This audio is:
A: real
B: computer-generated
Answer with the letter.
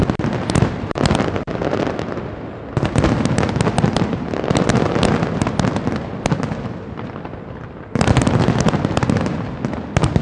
A